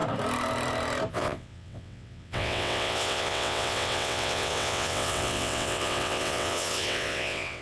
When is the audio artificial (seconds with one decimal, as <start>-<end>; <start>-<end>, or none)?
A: 1.1-7.6